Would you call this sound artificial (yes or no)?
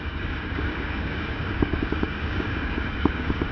yes